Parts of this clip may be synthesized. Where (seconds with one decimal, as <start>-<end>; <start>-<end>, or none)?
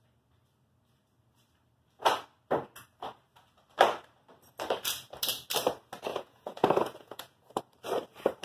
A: 6.1-7.6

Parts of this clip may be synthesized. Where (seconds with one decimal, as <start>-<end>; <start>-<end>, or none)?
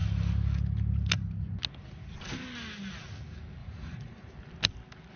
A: 3.6-4.3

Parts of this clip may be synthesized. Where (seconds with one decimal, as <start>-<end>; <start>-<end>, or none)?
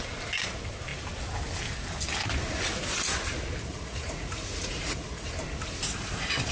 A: 3.7-5.3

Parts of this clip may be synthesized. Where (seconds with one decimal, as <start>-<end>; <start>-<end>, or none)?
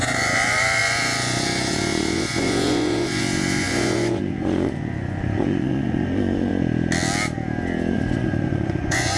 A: 0.0-6.5; 7.9-9.2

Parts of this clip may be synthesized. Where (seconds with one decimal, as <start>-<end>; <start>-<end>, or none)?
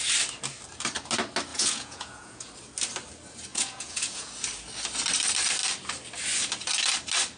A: 1.5-2.5; 3.5-4.3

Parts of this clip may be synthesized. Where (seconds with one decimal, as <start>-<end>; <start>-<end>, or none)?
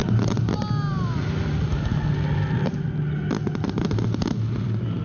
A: none